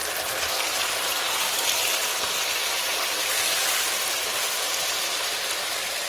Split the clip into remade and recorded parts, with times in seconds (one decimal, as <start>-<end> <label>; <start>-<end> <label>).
0.0-0.5 remade; 0.5-2.0 recorded; 2.0-5.6 remade; 5.6-6.1 recorded